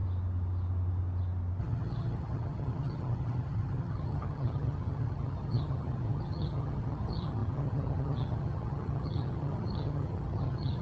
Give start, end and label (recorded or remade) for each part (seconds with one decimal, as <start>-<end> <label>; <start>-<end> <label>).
0.0-1.6 recorded; 1.6-10.8 remade